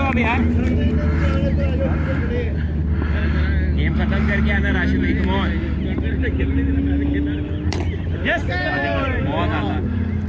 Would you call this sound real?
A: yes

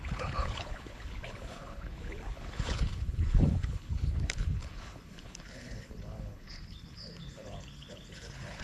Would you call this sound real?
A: no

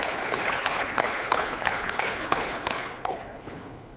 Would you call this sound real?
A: no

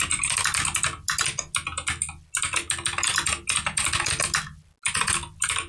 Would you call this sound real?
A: yes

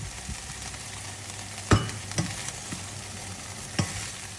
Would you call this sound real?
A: yes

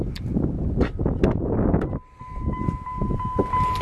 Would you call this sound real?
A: yes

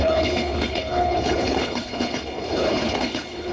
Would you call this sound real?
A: no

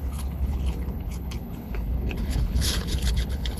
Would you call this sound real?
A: no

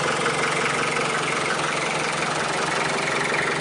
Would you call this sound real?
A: yes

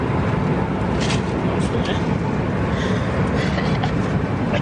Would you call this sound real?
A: yes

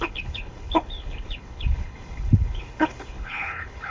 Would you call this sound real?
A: no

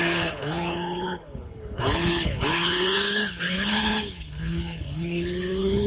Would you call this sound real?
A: no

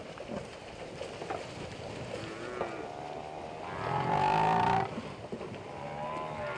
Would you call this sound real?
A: yes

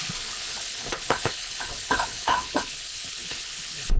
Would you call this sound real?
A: no